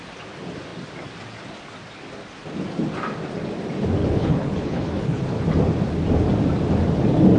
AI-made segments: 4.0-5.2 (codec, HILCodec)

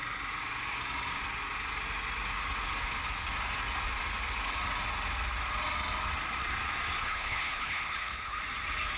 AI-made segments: 7.0-8.4 (codec, HILCodec)

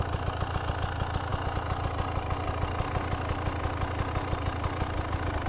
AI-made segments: none

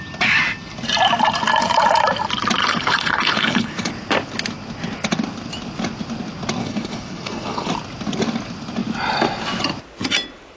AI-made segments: 2.6-3.9 (codec, HILCodec); 6.6-7.7

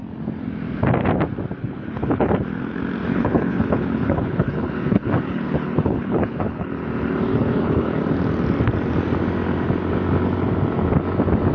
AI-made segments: 1.6-2.3 (codec, HILCodec); 3.0-6.7; 7.3-8.0

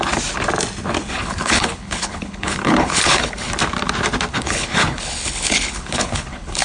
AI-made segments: 1.0-3.5 (codec, HILCodec); 4.3-6.6

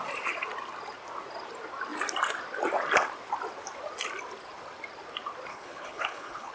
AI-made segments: 5.5-6.5 (codec, HILCodec)

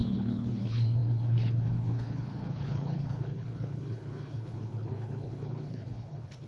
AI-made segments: 0.0-6.5 (codec, HILCodec)